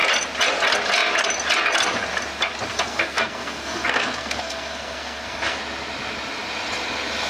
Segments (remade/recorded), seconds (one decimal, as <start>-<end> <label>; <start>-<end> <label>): 0.0-2.7 recorded; 2.7-5.6 remade; 5.6-7.3 recorded